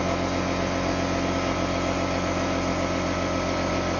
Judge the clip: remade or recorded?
recorded